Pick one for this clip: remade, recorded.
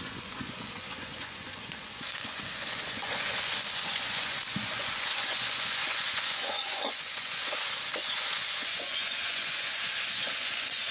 remade